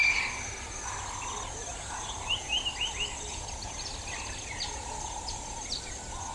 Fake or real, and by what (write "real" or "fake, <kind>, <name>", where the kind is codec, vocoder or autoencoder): real